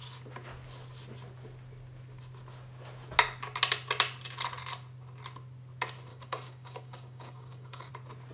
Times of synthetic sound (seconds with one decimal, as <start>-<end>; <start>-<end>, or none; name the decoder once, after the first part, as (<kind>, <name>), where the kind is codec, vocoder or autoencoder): 6.1-7.9 (codec, DAC)